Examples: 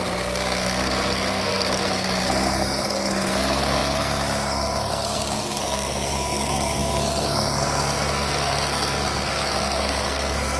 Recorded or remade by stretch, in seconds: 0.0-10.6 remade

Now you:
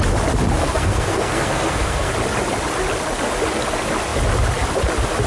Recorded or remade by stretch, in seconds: 0.0-0.6 recorded; 0.6-2.1 remade; 2.1-5.3 recorded